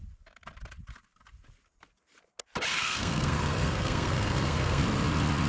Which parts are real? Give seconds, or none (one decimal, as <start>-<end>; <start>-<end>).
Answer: 0.0-2.7; 4.8-5.5